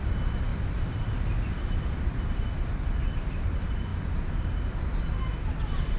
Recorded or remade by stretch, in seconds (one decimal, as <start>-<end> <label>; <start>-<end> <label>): 0.0-6.0 remade